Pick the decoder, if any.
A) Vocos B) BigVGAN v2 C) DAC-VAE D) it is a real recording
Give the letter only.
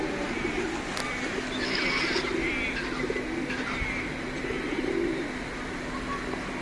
D